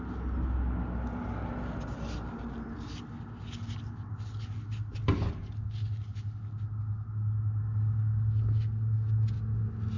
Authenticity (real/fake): real